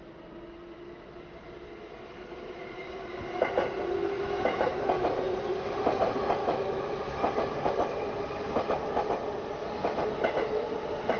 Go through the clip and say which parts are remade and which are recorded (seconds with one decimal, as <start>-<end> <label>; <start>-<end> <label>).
0.0-4.0 recorded; 4.0-4.8 remade; 4.8-6.4 recorded; 6.4-7.2 remade; 7.2-11.2 recorded